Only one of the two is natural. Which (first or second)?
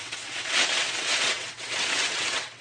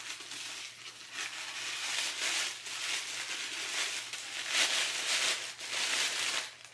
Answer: second